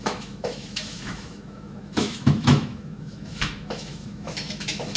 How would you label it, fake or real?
fake